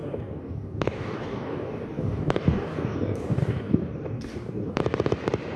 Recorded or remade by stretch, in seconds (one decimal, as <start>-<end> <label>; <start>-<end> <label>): 0.0-4.8 remade; 4.8-5.6 recorded